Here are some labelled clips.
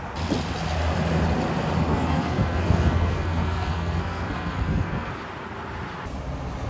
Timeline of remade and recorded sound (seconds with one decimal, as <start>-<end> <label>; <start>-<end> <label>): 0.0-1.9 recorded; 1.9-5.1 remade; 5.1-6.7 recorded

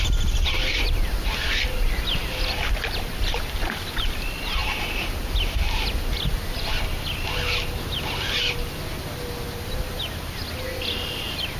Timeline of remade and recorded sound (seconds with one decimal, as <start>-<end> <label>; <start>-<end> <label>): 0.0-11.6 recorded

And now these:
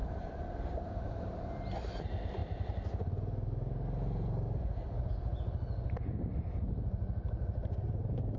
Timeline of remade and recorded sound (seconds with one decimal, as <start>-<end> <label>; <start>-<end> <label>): 0.0-2.0 remade; 2.0-8.4 recorded

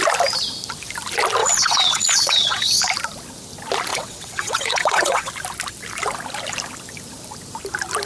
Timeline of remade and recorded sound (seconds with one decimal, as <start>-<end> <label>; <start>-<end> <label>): 0.0-1.4 recorded; 1.4-2.8 remade; 2.8-3.9 recorded; 3.9-5.3 remade; 5.3-8.1 recorded